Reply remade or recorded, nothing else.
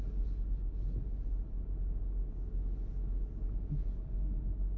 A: recorded